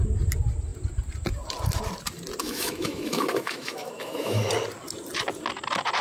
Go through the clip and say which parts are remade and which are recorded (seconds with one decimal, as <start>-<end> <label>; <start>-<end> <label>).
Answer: 0.0-2.4 recorded; 2.4-4.5 remade; 4.5-6.0 recorded